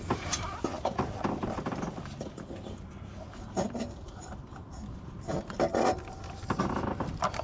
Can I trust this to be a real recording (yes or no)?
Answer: no